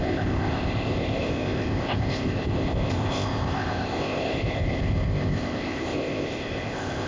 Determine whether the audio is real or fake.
fake